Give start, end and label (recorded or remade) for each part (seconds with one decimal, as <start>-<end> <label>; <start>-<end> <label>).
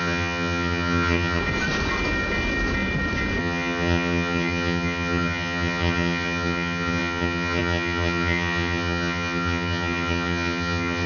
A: 0.0-1.4 remade; 1.4-3.4 recorded; 3.4-11.1 remade